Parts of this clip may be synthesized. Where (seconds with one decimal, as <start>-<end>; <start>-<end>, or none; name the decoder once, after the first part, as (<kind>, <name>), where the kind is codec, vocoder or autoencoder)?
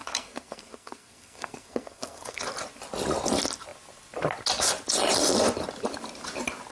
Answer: 0.0-2.4 (codec, SNAC)